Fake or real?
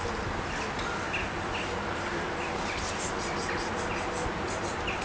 real